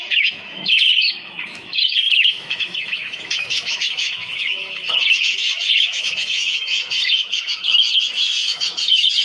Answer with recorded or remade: remade